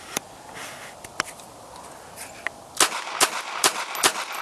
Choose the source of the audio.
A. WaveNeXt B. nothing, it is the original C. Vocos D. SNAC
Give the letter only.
B